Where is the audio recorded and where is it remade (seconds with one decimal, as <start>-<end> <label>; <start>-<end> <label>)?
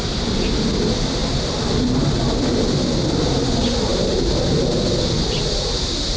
0.0-6.2 recorded